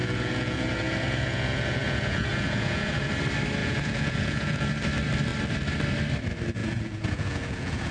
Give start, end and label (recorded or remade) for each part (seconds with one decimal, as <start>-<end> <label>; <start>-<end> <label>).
0.0-3.1 remade; 3.1-3.6 recorded; 3.6-4.7 remade; 4.7-6.6 recorded; 6.6-7.9 remade